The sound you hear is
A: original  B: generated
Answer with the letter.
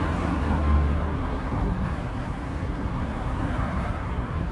B